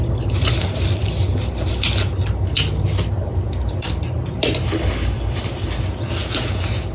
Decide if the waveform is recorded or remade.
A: recorded